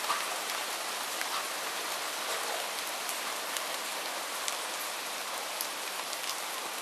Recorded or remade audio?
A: recorded